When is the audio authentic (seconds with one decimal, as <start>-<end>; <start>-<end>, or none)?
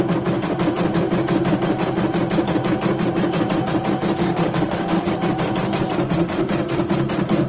0.0-4.2; 5.1-7.5